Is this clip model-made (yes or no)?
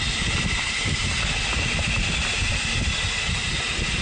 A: no